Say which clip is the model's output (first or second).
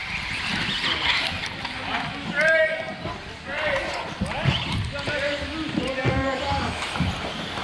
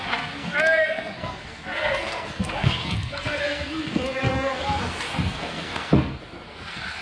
second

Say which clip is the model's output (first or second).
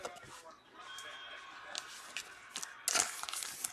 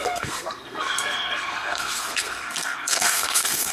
second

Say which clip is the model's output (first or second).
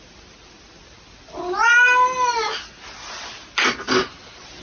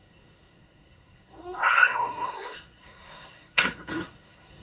second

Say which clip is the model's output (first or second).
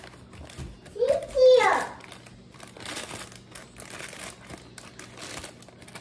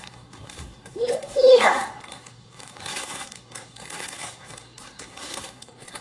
second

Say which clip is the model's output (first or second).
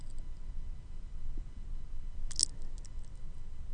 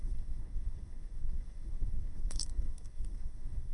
second